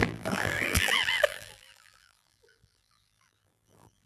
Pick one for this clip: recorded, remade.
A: remade